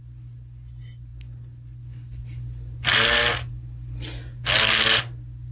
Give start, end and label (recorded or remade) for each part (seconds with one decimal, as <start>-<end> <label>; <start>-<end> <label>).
0.0-5.5 recorded

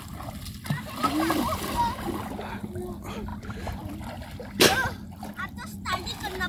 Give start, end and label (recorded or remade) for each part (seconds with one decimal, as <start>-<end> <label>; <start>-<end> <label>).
0.0-1.0 recorded; 1.0-2.1 remade; 2.1-3.3 recorded; 3.3-5.9 remade; 5.9-6.5 recorded

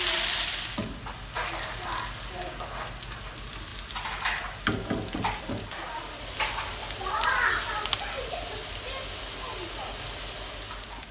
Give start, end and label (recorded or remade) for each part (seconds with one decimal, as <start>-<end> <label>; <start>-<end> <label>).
0.0-11.1 recorded

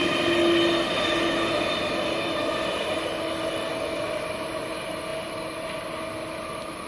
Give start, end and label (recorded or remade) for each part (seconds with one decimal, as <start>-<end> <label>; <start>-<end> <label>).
0.0-6.9 recorded

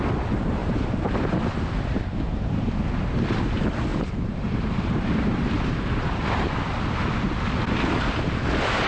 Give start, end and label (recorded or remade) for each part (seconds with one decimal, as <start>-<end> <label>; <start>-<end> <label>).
0.0-0.6 recorded; 0.6-2.7 remade; 2.7-3.9 recorded; 3.9-6.6 remade; 6.6-8.9 recorded

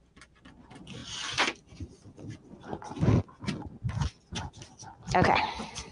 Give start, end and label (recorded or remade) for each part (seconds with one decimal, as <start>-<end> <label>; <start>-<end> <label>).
0.0-5.9 recorded

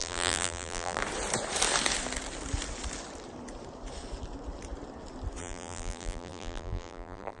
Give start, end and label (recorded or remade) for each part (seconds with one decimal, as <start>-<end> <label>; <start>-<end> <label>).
0.0-1.0 remade; 1.0-5.4 recorded; 5.4-7.4 remade